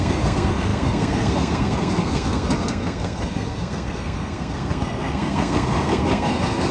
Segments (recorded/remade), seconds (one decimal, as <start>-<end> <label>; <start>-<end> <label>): 0.0-6.7 remade